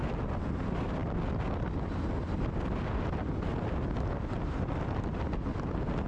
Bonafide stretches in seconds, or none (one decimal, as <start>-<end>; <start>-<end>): 0.0-6.1